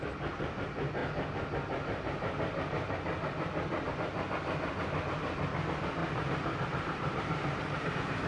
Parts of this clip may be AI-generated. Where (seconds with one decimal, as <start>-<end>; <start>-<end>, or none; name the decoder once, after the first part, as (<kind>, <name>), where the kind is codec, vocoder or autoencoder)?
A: 6.0-7.9 (vocoder, BigVGAN v2)